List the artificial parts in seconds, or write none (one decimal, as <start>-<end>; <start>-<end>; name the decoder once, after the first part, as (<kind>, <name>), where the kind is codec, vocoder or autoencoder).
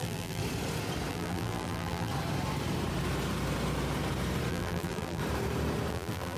0.0-0.4 (vocoder, BigVGAN v2); 1.1-2.1; 4.5-5.2; 5.9-6.4